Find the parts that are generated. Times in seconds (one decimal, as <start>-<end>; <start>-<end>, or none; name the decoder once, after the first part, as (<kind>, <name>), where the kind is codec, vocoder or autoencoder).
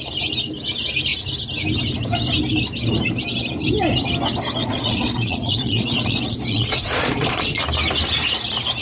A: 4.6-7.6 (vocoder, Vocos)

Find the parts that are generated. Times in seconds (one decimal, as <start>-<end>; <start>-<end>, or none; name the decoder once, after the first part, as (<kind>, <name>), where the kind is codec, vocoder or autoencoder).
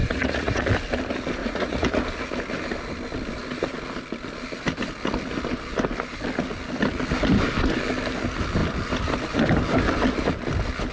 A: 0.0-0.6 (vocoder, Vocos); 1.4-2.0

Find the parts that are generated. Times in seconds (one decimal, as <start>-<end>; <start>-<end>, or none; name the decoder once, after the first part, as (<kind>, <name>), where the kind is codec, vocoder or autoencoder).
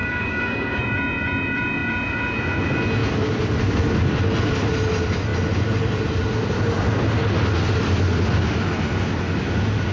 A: 0.0-0.8 (codec, DAC)